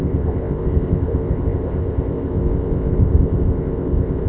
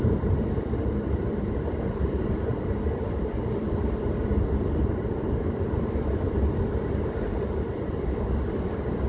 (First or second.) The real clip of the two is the second